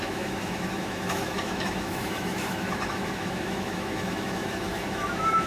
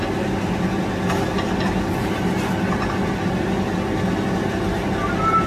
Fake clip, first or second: first